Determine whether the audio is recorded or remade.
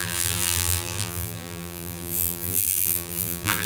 remade